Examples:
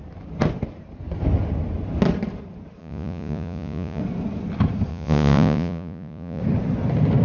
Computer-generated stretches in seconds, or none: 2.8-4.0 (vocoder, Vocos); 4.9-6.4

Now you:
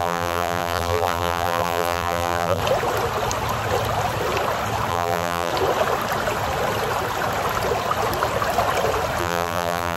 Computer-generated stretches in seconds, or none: 0.0-2.6 (vocoder, BigVGAN v2); 4.9-5.5; 9.2-10.0

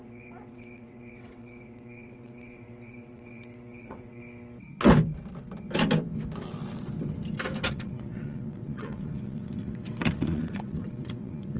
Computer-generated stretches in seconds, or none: 0.0-4.2 (vocoder, WaveNeXt); 7.7-11.6